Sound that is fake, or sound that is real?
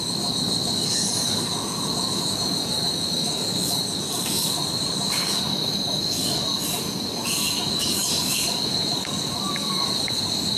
fake